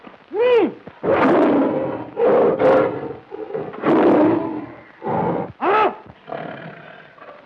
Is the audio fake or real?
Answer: real